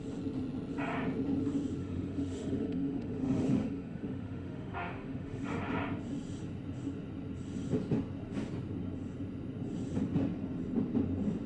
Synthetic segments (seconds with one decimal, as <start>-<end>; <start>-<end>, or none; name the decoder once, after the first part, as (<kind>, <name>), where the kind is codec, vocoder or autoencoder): 1.8-5.6 (autoencoder, DAC-VAE)